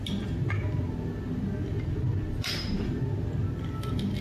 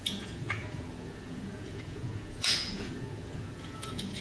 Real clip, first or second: first